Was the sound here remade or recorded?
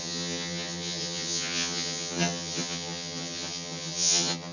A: remade